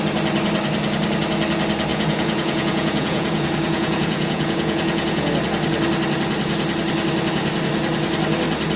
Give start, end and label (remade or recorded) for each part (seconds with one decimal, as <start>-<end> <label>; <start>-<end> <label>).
0.0-1.9 recorded; 1.9-5.3 remade; 5.3-8.8 recorded